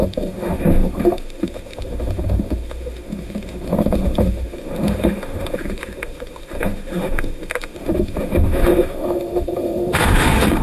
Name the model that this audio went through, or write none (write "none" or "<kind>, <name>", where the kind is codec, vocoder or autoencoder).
autoencoder, DAC-VAE